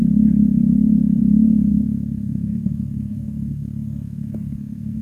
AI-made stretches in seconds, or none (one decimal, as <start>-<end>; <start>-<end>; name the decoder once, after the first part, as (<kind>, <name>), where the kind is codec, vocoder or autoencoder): 1.7-5.0 (codec, SNAC)